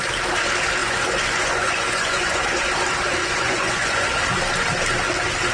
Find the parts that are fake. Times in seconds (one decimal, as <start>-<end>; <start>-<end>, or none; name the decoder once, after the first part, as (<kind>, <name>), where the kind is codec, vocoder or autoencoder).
0.8-2.7 (vocoder, Vocos); 3.2-4.2